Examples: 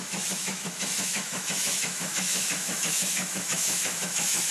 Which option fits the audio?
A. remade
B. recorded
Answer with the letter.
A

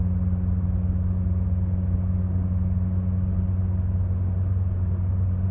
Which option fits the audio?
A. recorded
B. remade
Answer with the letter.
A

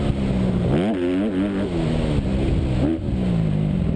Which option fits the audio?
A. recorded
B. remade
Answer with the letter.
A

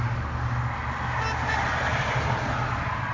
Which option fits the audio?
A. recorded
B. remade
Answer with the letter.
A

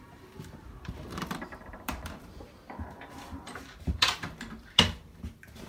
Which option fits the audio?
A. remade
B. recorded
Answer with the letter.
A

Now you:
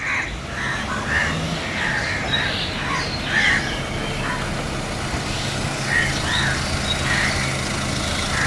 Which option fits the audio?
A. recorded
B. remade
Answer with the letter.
A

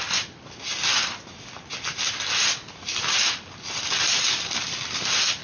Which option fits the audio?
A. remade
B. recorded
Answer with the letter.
B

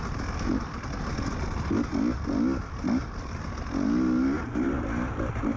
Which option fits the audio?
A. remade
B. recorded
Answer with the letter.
B